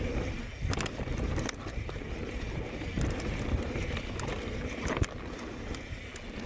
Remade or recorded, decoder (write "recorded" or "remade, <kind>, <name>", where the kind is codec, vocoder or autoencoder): recorded